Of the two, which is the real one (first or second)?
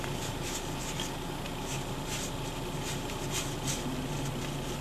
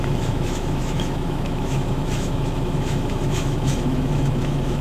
first